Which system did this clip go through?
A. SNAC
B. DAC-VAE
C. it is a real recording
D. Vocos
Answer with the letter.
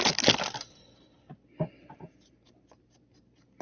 C